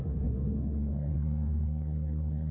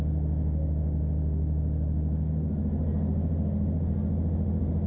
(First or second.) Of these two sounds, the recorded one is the second